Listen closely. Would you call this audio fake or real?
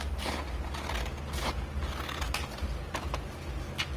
real